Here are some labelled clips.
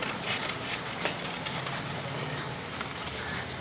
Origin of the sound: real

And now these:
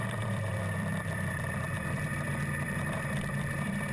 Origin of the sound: fake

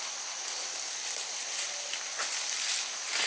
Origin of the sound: real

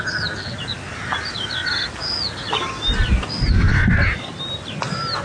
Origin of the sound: real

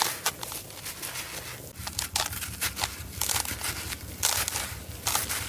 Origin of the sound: real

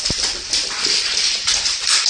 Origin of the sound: real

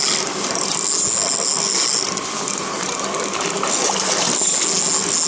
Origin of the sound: real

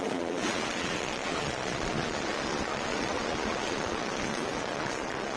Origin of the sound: fake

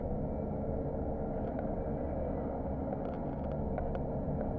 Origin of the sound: real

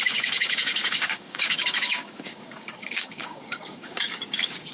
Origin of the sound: fake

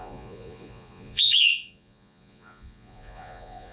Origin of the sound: fake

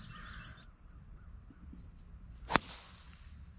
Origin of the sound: real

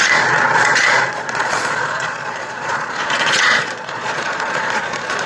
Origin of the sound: fake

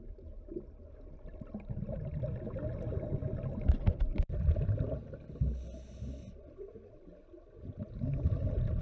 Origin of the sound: real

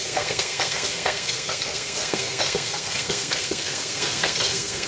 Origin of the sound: fake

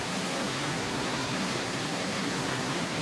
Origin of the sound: fake